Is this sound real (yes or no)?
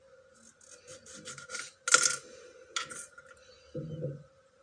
yes